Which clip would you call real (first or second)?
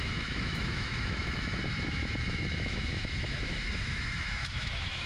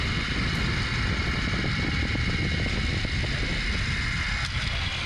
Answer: second